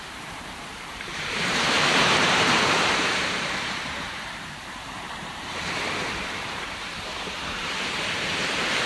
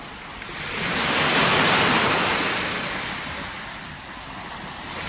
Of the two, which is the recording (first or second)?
second